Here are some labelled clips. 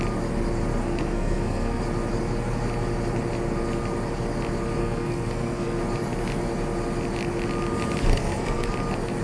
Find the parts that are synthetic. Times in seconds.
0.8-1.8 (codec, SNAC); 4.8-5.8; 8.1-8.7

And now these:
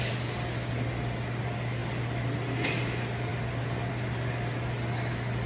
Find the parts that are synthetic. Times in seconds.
none

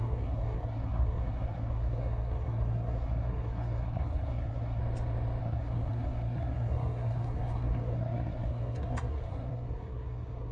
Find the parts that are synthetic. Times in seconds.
0.0-4.8 (codec, SNAC); 5.4-10.5

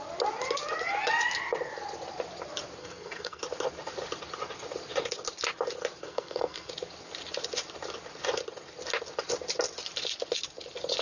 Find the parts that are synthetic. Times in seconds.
2.8-3.4 (codec, SNAC); 6.0-6.7